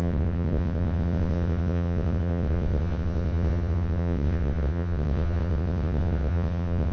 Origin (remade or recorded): remade